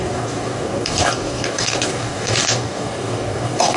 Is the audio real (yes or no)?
no